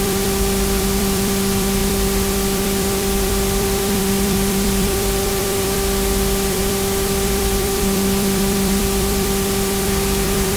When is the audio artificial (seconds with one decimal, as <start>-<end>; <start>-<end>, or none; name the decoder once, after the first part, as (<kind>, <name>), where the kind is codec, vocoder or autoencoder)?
0.0-10.6 (vocoder, BigVGAN v2)